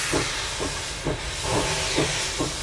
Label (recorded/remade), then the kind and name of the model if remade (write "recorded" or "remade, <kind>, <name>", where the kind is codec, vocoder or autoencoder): recorded